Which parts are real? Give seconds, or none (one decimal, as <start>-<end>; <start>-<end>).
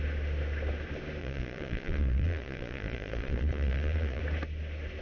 0.0-1.2; 4.2-5.0